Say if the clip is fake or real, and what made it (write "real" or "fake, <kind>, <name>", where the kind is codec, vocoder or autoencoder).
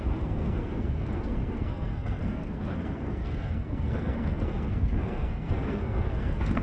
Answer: fake, codec, SNAC